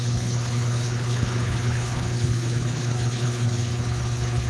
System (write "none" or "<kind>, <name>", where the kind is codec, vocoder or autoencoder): codec, HILCodec